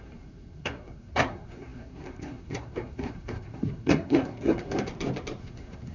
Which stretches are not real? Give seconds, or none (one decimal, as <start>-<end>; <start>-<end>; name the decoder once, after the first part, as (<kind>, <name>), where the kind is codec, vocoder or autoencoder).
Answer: 0.0-4.9 (codec, SNAC); 5.4-5.9